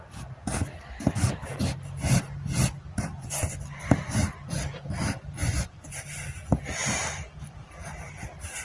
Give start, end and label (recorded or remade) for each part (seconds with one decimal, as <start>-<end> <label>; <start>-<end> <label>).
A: 0.0-5.4 recorded; 5.4-6.0 remade; 6.0-8.6 recorded